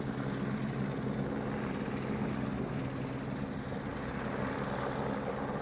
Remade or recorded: recorded